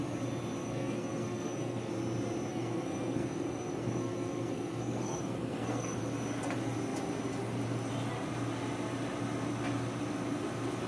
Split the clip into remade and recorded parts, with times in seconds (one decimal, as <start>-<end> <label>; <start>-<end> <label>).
0.0-0.6 recorded; 0.6-1.9 remade; 1.9-2.5 recorded; 2.5-6.0 remade; 6.0-10.9 recorded

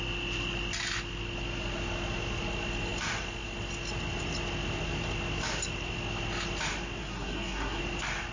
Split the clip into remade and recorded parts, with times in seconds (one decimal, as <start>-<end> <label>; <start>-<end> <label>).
0.0-7.0 recorded; 7.0-7.8 remade; 7.8-8.3 recorded

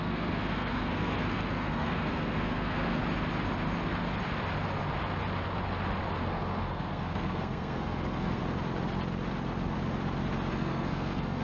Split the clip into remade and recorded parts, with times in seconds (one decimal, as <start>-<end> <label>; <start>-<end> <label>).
0.0-3.0 remade; 3.0-6.2 recorded; 6.2-8.4 remade; 8.4-10.5 recorded; 10.5-11.4 remade

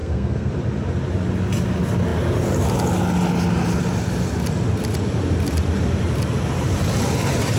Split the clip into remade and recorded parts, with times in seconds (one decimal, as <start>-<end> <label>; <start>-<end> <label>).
0.0-0.5 remade; 0.5-7.6 recorded

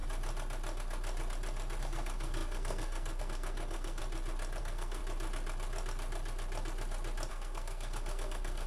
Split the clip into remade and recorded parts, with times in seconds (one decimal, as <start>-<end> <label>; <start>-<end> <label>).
0.0-1.8 recorded; 1.8-4.0 remade; 4.0-4.6 recorded; 4.6-5.0 remade; 5.0-7.3 recorded; 7.3-8.7 remade

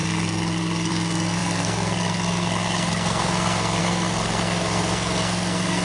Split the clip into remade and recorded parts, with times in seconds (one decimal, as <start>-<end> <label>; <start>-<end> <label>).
0.0-5.8 remade

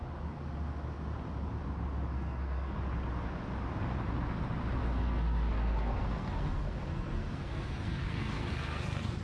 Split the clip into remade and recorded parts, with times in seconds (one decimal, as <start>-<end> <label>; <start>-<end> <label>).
0.0-2.1 recorded; 2.1-2.7 remade; 2.7-4.8 recorded; 4.8-9.2 remade